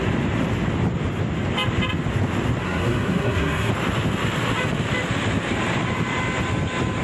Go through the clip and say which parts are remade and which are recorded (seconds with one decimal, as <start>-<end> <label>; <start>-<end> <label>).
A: 0.0-2.6 recorded; 2.6-3.7 remade; 3.7-7.0 recorded